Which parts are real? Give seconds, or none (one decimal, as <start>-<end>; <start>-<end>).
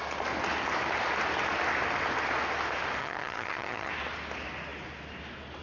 0.0-3.0; 3.9-5.6